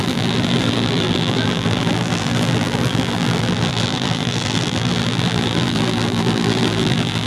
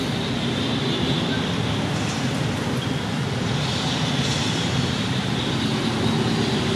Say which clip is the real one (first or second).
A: second